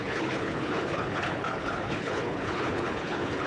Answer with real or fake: fake